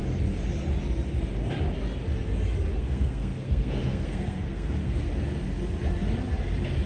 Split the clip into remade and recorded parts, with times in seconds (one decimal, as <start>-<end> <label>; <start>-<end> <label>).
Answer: 0.0-2.7 recorded; 2.7-5.1 remade; 5.1-6.9 recorded